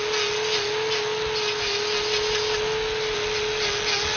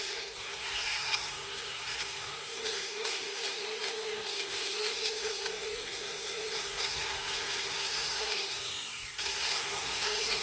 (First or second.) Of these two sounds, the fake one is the second